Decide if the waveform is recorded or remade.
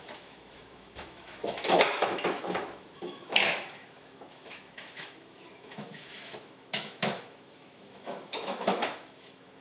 remade